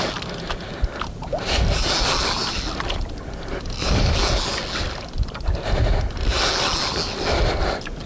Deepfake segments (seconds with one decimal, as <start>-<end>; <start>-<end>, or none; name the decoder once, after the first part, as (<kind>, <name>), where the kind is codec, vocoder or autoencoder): none

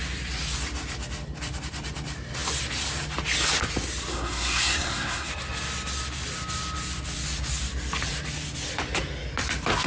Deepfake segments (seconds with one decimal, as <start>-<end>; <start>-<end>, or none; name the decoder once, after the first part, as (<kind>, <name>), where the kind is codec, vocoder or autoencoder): 4.1-5.3 (codec, SNAC)